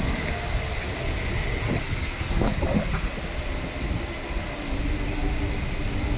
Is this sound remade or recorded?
recorded